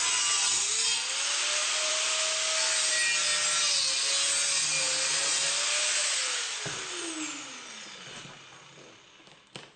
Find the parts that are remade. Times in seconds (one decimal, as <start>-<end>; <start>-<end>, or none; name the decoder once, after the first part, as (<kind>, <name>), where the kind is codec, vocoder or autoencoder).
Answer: none